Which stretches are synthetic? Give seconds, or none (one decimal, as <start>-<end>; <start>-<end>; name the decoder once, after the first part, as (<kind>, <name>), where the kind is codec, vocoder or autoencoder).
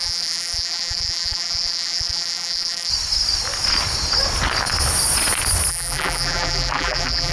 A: 0.0-2.9 (vocoder, BigVGAN v2); 5.7-7.3